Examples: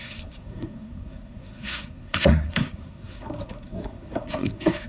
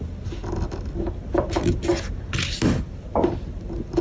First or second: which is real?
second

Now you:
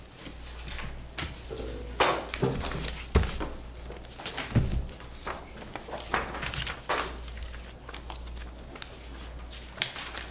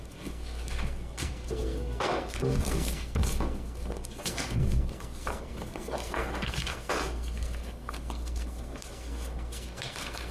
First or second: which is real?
first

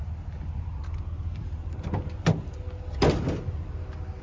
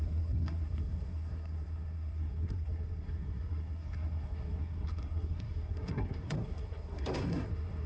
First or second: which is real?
first